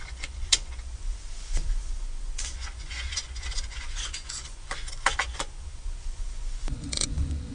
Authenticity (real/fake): fake